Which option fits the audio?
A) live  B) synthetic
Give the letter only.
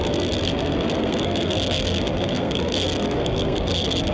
B